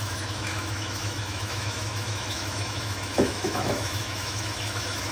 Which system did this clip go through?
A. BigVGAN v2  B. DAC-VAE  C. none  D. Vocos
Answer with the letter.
B